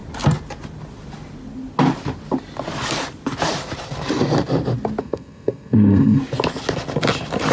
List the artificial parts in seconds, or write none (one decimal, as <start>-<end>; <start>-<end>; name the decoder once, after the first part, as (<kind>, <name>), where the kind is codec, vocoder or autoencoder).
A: 5.0-6.2 (codec, SNAC)